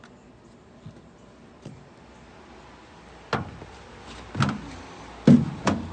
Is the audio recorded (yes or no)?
yes